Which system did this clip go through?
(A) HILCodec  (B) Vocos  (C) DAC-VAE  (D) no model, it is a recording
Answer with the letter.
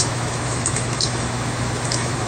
C